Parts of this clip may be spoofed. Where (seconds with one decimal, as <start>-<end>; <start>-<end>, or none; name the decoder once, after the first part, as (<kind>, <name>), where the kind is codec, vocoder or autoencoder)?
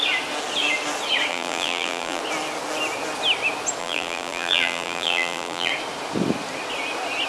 1.3-2.2 (vocoder, BigVGAN v2); 3.8-5.7